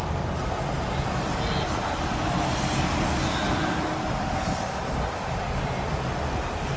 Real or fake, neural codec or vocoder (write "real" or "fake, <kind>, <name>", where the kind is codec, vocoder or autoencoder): real